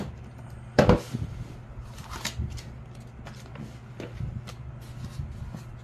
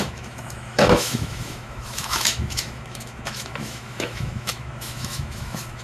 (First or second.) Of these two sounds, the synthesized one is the second